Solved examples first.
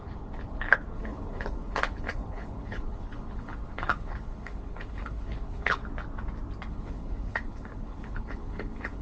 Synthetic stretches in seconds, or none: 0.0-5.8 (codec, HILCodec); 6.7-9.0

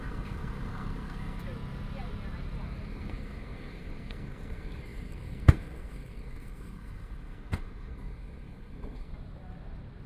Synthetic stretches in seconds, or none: 0.0-1.4 (codec, SNAC); 2.9-9.1